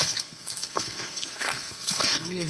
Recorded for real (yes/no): no